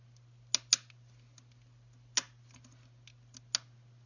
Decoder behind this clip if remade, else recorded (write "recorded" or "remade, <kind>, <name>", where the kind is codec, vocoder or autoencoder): recorded